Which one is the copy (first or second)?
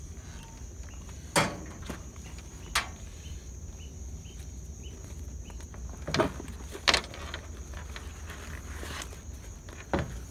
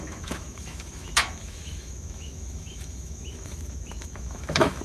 second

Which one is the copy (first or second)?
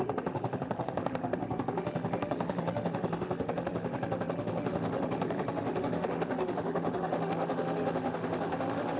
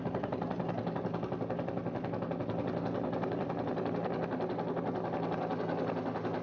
first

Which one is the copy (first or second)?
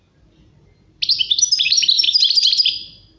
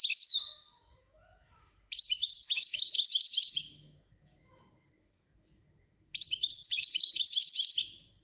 second